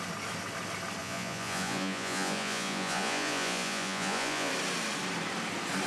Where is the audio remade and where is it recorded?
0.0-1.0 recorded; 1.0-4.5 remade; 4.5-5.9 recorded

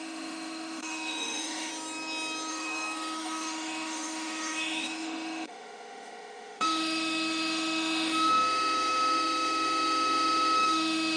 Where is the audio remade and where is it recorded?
0.0-1.7 remade; 1.7-2.5 recorded; 2.5-11.2 remade